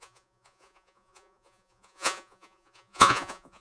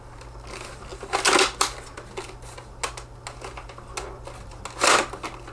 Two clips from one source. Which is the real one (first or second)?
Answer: second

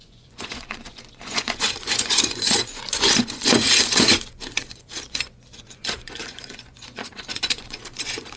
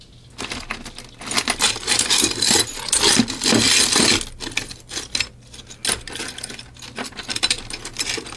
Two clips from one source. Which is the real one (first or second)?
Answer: second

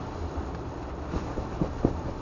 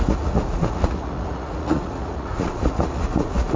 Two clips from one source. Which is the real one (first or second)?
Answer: first